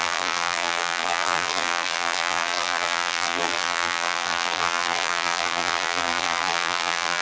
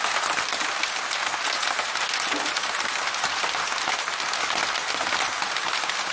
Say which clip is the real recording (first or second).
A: second